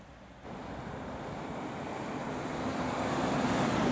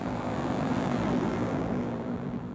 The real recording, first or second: first